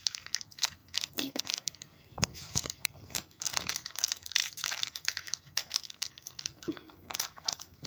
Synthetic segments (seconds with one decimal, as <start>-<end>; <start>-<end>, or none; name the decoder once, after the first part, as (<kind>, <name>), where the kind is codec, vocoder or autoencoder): 0.0-7.9 (codec, SNAC)